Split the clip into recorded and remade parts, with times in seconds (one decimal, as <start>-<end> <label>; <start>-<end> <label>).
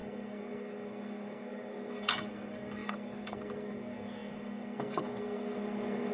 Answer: 0.0-6.1 remade